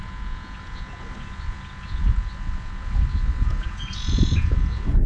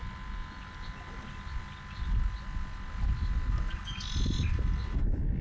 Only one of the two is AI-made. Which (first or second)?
first